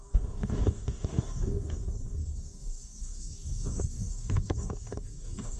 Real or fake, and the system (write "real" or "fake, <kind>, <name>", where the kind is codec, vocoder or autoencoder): fake, codec, DAC